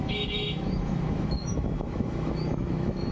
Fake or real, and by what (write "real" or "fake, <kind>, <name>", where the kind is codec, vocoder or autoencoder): fake, autoencoder, DAC-VAE